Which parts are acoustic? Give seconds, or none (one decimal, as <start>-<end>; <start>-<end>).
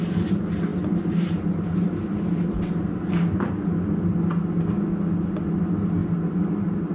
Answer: 0.0-6.9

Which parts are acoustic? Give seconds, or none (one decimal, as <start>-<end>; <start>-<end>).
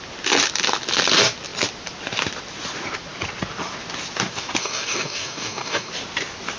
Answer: 0.0-4.6; 5.9-6.6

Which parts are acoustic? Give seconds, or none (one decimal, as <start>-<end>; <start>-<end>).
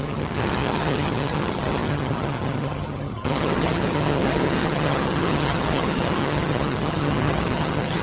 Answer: none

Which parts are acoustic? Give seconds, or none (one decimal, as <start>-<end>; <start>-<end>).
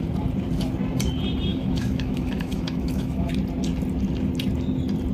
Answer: 0.0-1.5; 3.3-5.1